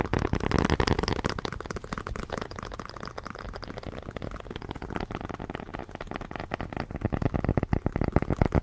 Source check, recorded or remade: recorded